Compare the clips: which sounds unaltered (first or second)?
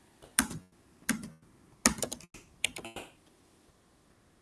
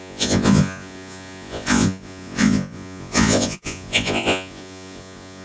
first